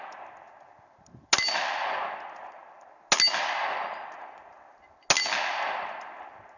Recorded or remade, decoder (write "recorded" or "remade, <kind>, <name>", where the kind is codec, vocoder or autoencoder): recorded